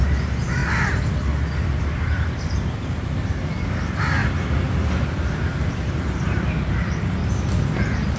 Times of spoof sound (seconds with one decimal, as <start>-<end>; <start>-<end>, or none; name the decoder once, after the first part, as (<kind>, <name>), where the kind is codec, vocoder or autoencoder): 0.0-0.6 (vocoder, BigVGAN v2); 1.8-4.2; 5.1-7.2; 7.7-8.2